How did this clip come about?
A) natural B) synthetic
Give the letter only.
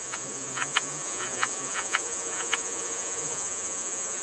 B